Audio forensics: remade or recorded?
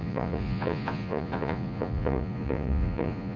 remade